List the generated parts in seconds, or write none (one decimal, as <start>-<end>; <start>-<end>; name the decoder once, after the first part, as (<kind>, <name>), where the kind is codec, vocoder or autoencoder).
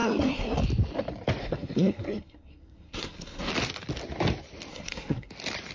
0.0-0.6 (codec, SNAC); 1.4-3.5; 4.7-5.3